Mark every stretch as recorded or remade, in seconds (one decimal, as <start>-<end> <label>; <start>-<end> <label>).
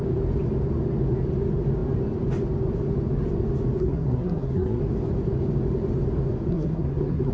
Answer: 0.0-3.8 recorded; 3.8-4.8 remade; 4.8-6.5 recorded; 6.5-7.3 remade